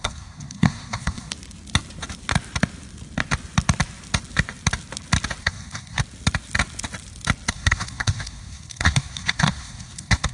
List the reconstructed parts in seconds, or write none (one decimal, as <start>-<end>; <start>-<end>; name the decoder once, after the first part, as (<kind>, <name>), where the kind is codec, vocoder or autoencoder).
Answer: 0.0-1.3 (codec, SNAC); 5.4-6.0; 7.5-10.3